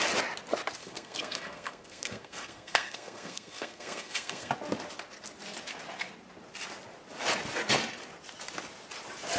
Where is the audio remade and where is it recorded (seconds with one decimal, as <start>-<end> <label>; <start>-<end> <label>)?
0.0-0.8 recorded; 0.8-4.5 remade; 4.5-9.4 recorded